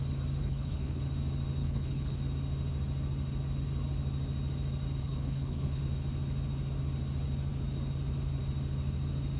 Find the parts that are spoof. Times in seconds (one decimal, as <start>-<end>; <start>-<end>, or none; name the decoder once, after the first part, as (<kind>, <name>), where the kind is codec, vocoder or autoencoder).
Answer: 0.4-1.0 (codec, HILCodec); 1.6-2.2; 5.0-5.8